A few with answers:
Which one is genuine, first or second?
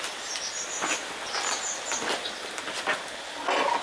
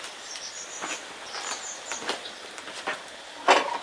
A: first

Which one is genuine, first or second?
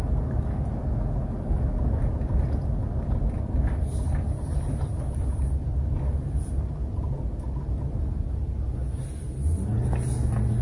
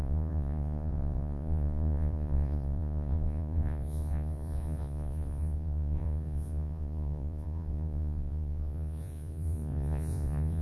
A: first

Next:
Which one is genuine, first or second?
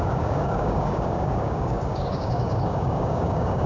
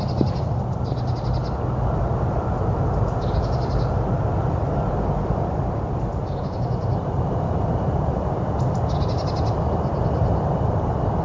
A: second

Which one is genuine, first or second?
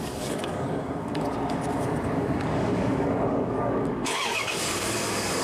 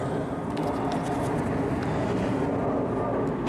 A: second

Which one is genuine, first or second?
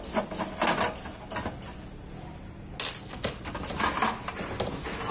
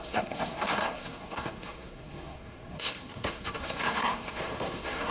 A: first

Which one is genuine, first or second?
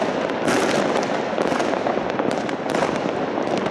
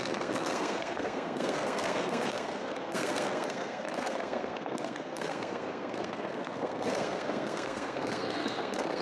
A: first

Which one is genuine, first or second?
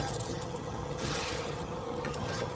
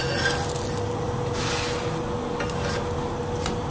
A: second